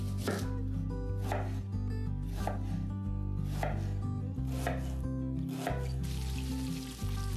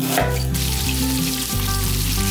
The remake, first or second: second